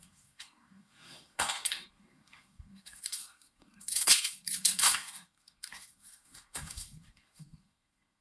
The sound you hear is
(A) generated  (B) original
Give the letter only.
A